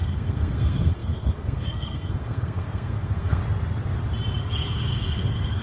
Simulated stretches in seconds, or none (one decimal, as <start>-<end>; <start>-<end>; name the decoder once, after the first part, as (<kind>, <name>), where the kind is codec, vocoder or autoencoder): 0.0-3.4 (codec, SNAC); 4.4-5.6